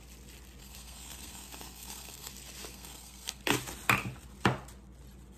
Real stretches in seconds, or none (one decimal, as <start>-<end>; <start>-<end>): 0.0-0.6; 2.3-2.7; 3.4-5.4